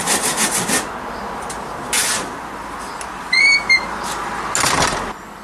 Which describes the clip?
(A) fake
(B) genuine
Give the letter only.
B